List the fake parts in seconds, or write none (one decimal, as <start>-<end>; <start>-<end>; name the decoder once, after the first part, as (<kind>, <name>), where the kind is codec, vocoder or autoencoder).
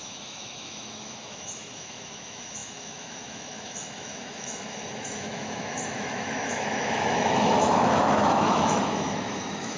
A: 0.0-9.8 (autoencoder, DAC-VAE)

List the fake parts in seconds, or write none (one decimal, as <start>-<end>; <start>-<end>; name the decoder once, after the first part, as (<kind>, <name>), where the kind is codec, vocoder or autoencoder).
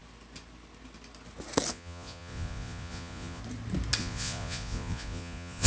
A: 1.7-3.4 (vocoder, Vocos); 4.0-5.7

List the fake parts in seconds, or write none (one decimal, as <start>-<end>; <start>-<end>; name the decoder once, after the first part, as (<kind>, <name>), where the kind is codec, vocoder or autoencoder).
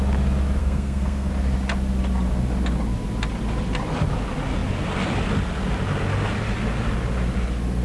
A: 0.6-1.3 (codec, SNAC)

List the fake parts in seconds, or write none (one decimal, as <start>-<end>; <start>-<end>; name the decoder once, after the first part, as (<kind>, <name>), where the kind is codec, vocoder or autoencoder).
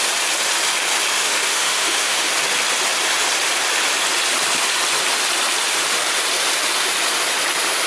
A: 1.2-2.3 (autoencoder, DAC-VAE)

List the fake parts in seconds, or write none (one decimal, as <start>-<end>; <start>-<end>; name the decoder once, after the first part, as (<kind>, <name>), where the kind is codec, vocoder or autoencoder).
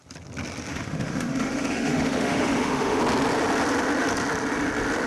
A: 0.7-3.0 (autoencoder, DAC-VAE)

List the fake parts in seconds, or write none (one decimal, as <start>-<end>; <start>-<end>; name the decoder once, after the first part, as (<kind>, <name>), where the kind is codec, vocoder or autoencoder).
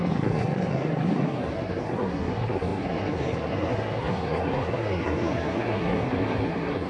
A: 0.0-6.9 (codec, SNAC)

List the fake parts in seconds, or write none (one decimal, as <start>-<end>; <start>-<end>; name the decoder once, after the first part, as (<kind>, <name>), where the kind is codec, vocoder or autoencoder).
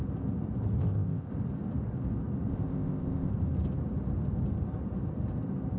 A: 0.8-1.3 (codec, ZipCodec); 2.5-3.3